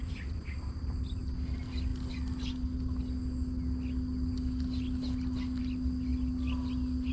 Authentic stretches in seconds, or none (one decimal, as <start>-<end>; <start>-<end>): 0.0-7.1